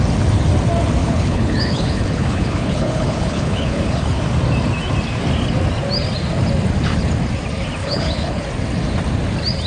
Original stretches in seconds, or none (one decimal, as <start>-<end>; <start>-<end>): 0.0-1.0; 4.2-7.8; 8.4-9.7